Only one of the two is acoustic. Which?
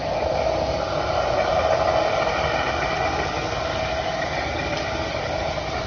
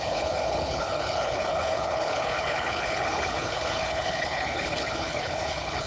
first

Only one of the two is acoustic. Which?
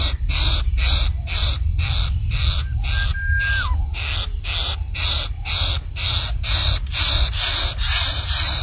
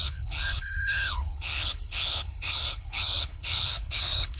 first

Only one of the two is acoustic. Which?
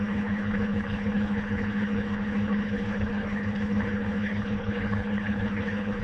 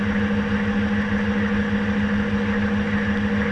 second